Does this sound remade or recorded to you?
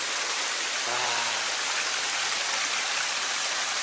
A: recorded